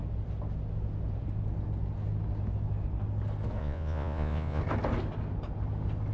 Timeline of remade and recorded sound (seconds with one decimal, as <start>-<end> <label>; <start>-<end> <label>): 0.0-3.6 recorded; 3.6-4.6 remade; 4.6-6.1 recorded